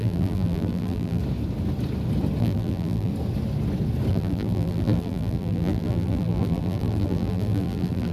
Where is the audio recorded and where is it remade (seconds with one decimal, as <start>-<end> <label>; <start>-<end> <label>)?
0.0-1.2 remade; 1.2-2.4 recorded; 2.4-3.1 remade; 3.1-4.1 recorded; 4.1-8.1 remade